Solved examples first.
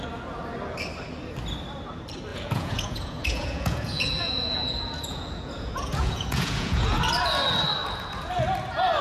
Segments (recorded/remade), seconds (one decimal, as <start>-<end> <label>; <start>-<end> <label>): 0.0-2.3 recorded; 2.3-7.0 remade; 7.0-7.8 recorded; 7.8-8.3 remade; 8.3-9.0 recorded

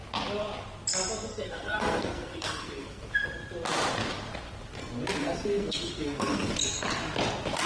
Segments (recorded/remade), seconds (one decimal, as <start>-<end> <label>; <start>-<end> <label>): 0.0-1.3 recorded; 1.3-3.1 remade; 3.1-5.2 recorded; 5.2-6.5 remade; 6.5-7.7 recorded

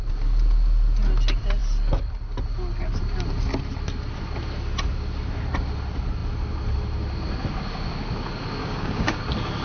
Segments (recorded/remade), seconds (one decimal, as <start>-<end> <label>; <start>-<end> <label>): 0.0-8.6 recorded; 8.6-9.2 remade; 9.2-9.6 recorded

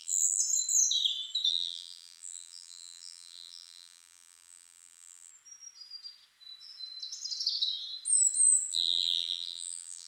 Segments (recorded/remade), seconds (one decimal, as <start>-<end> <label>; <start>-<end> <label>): 0.0-0.4 remade; 0.4-1.5 recorded; 1.5-5.3 remade; 5.3-8.7 recorded; 8.7-10.1 remade

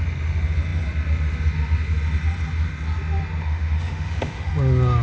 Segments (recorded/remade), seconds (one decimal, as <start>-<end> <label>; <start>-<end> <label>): 0.0-3.4 recorded; 3.4-4.5 remade; 4.5-5.0 recorded

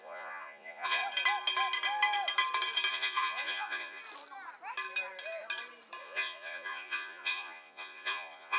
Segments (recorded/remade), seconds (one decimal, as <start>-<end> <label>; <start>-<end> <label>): 0.0-1.0 remade; 1.0-2.9 recorded; 2.9-4.0 remade; 4.0-6.0 recorded; 6.0-8.6 remade

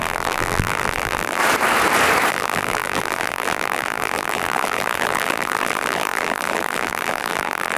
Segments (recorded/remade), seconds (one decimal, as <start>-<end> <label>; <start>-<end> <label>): 0.0-1.4 remade; 1.4-2.3 recorded; 2.3-7.8 remade